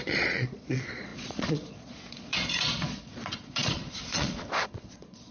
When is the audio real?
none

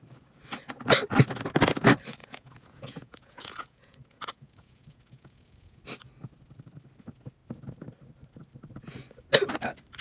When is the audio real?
0.0-2.2; 5.8-10.0

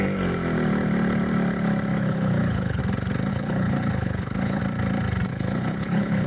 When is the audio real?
0.0-1.9; 2.8-3.3; 4.6-5.3

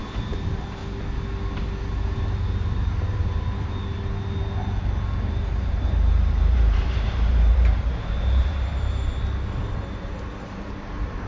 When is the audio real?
0.8-5.3; 9.1-9.8